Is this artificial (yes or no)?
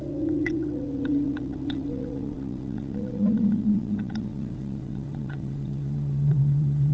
yes